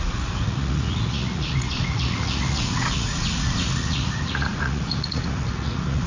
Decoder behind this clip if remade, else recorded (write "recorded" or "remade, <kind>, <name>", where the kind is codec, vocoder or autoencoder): remade, vocoder, Vocos